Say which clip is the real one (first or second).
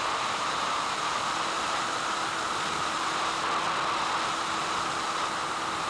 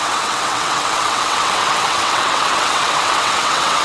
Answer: first